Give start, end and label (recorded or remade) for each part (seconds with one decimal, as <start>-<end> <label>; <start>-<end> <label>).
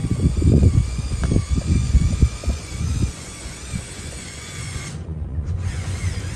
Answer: 0.0-6.4 remade